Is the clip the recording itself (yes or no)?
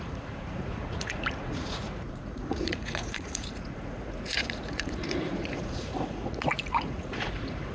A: no